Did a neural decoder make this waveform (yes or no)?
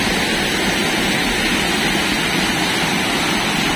no